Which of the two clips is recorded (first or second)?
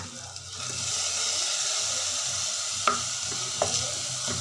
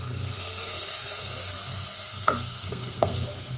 first